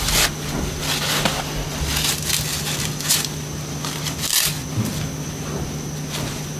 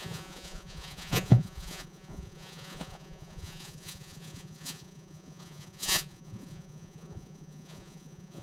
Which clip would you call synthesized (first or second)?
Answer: second